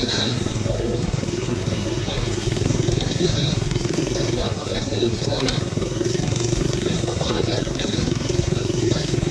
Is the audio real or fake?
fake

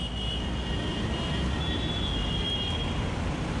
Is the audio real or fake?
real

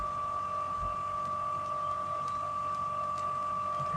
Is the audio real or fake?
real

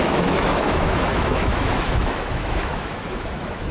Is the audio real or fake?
fake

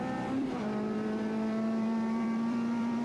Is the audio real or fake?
fake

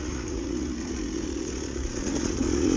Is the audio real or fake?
fake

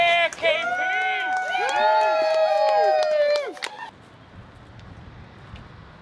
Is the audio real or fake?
real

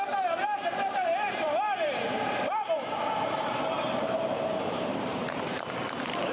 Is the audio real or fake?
fake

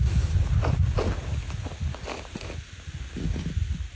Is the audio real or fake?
real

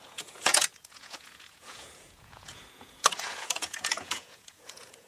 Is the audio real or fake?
fake